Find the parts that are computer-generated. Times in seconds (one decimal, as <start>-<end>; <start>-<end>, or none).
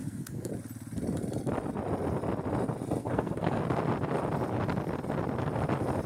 0.0-0.5; 3.0-3.6